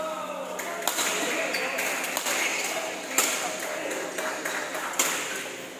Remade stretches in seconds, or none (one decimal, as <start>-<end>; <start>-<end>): none